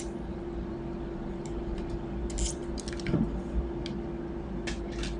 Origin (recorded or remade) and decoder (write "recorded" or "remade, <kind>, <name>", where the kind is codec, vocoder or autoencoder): recorded